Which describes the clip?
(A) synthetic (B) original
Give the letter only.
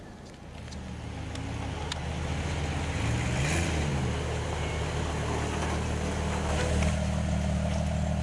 B